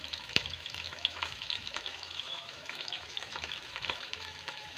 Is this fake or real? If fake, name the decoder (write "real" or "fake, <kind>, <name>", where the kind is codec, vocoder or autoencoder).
fake, autoencoder, DAC-VAE